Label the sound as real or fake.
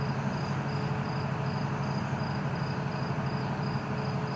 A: real